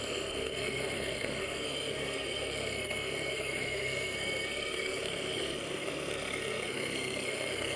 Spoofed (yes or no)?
yes